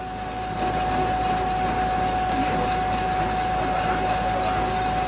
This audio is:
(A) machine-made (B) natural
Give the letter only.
B